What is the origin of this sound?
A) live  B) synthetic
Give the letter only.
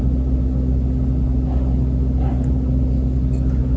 A